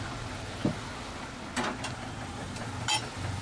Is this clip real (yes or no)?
yes